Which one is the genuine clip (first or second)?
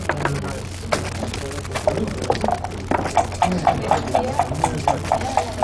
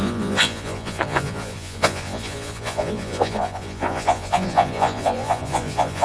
first